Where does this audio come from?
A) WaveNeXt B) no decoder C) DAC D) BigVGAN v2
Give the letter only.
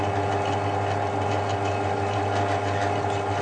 B